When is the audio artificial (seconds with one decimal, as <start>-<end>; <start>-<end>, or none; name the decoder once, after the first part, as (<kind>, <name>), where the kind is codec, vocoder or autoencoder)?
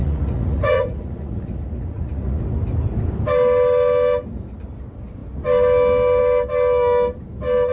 0.0-2.4 (vocoder, Vocos)